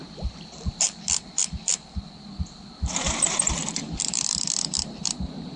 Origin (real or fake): fake